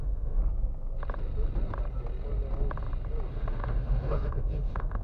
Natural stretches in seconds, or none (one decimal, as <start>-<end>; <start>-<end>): 0.4-3.3